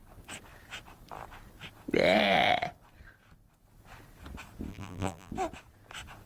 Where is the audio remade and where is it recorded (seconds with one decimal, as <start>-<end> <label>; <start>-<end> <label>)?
0.0-4.7 recorded; 4.7-5.3 remade; 5.3-6.3 recorded